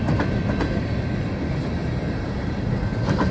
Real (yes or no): yes